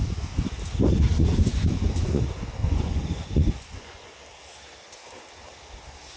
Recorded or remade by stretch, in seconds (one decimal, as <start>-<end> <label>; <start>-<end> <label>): 0.0-1.1 recorded; 1.1-2.2 remade; 2.2-2.6 recorded; 2.6-4.1 remade; 4.1-6.2 recorded